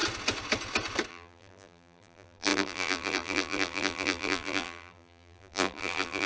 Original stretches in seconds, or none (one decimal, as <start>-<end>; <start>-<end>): 0.0-1.1